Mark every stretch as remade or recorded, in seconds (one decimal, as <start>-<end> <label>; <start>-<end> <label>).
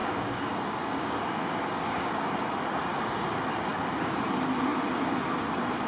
0.0-2.3 remade; 2.3-5.9 recorded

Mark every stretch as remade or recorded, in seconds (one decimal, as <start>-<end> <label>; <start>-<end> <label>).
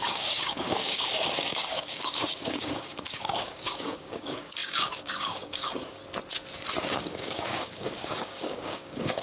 0.0-6.0 remade; 6.0-6.8 recorded; 6.8-9.2 remade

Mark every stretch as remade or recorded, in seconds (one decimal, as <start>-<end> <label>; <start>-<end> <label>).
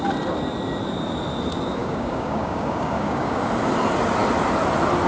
0.0-1.8 recorded; 1.8-3.4 remade; 3.4-5.1 recorded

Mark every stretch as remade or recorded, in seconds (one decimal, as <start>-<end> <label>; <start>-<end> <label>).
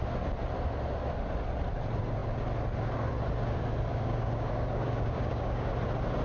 0.0-3.9 recorded; 3.9-5.7 remade; 5.7-6.2 recorded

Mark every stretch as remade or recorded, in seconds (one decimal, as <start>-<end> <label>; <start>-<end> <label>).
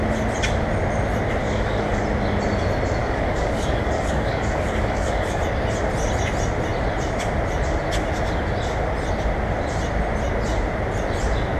0.0-1.4 recorded; 1.4-2.0 remade; 2.0-3.0 recorded; 3.0-5.4 remade; 5.4-11.6 recorded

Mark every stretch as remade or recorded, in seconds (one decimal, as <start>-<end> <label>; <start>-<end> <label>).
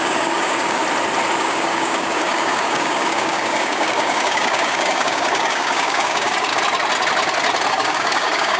0.0-0.8 remade; 0.8-1.4 recorded; 1.4-6.5 remade; 6.5-7.7 recorded; 7.7-8.6 remade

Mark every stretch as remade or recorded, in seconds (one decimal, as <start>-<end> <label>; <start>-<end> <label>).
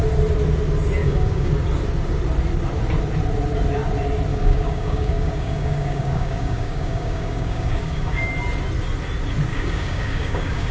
0.0-1.0 recorded; 1.0-1.5 remade; 1.5-4.3 recorded; 4.3-8.3 remade; 8.3-9.5 recorded; 9.5-10.7 remade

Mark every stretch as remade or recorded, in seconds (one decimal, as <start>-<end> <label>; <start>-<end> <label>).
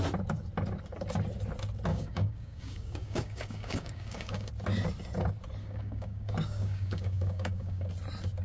0.0-1.9 recorded; 1.9-4.5 remade; 4.5-5.6 recorded; 5.6-7.9 remade; 7.9-8.4 recorded